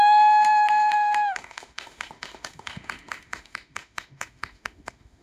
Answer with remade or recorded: remade